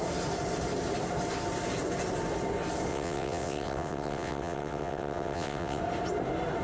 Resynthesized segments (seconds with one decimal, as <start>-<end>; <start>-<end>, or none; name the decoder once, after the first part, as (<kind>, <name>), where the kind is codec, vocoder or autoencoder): 2.9-5.8 (vocoder, WaveNeXt)